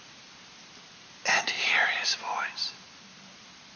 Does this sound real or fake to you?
fake